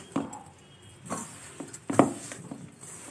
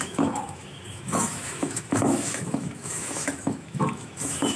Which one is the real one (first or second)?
first